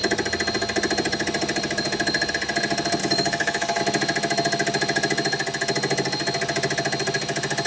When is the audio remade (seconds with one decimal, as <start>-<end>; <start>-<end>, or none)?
3.0-3.8